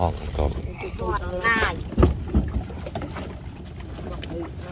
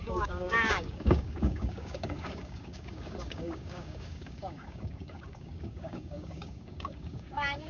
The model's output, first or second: second